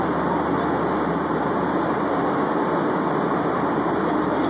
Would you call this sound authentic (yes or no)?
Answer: yes